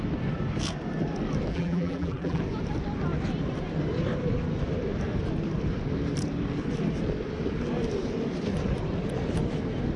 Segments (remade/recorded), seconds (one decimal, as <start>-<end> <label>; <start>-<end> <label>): 0.0-1.5 recorded; 1.5-2.4 remade; 2.4-10.0 recorded